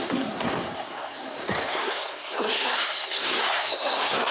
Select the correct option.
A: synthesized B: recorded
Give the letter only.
A